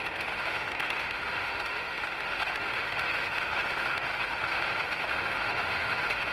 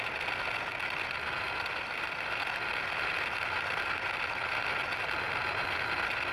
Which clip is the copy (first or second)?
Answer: first